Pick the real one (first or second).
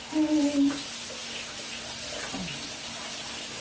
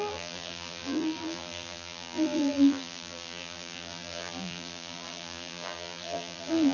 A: first